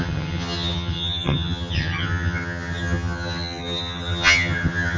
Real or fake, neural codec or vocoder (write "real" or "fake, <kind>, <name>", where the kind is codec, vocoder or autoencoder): fake, vocoder, HiFi-GAN